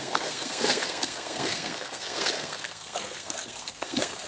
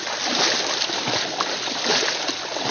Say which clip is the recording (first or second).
second